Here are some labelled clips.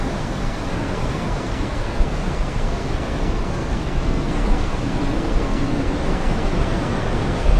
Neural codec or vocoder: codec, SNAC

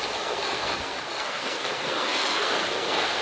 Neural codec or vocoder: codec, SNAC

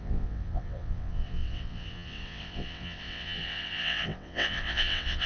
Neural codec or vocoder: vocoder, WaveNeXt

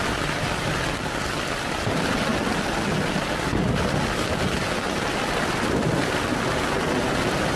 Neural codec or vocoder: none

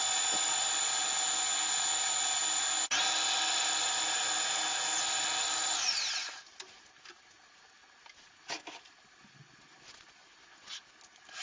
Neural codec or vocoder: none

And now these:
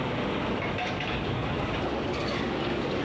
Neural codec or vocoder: codec, DAC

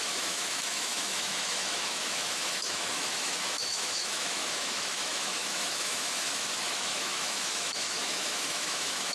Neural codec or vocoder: autoencoder, DAC-VAE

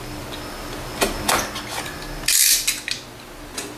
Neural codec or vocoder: none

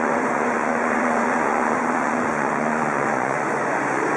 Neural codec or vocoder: vocoder, Vocos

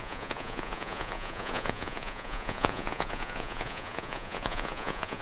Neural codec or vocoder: vocoder, Vocos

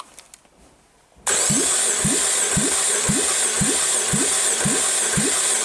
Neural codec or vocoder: none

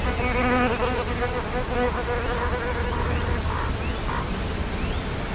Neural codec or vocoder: none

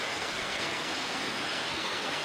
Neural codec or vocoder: codec, SNAC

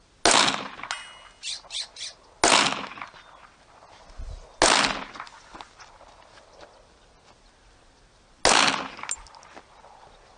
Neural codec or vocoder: none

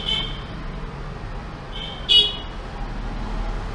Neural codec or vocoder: none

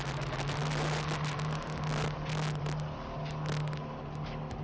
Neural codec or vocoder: none